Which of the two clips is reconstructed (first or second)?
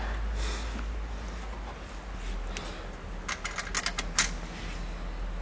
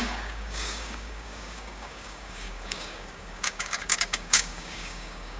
second